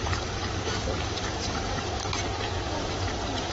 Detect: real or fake fake